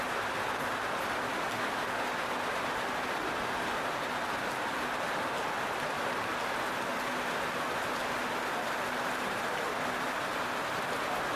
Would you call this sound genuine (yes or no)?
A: yes